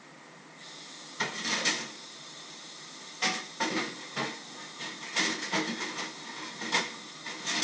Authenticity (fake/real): real